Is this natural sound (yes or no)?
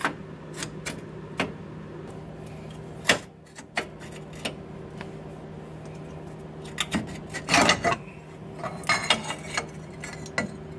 yes